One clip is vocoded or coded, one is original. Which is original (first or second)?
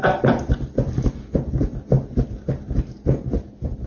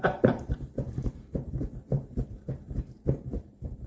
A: first